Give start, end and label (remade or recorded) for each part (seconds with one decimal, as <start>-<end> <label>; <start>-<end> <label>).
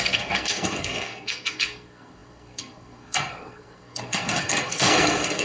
0.0-5.4 remade